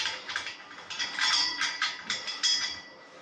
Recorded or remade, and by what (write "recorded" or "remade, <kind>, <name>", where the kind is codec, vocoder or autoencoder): recorded